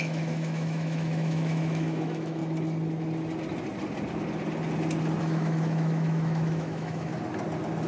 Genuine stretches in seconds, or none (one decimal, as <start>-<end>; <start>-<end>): 2.4-5.2; 7.1-7.9